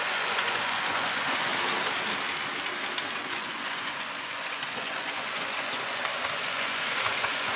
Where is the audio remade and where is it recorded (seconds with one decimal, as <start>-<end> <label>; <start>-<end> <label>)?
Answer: 0.0-1.5 remade; 1.5-3.2 recorded; 3.2-7.6 remade